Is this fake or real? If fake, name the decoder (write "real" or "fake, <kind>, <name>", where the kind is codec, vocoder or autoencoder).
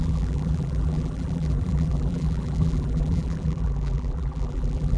fake, vocoder, BigVGAN v2